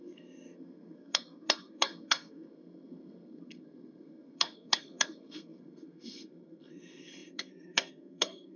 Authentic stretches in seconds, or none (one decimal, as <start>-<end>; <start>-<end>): none